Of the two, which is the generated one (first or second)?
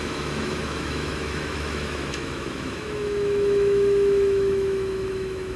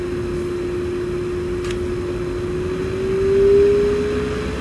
first